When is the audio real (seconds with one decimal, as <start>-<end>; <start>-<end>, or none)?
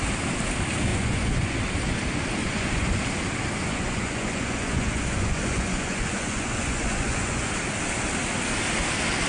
0.0-0.9; 1.6-2.4; 3.0-3.7; 7.5-9.3